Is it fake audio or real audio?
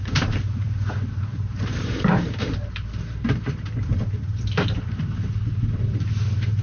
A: fake